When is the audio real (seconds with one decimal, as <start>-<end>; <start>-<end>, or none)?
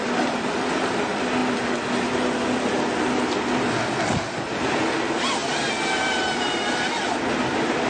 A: 0.0-7.9